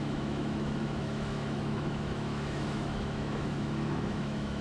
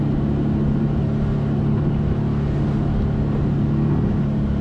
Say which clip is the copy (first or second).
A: first